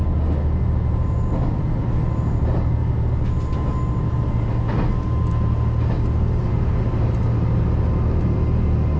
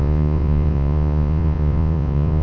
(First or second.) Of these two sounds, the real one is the first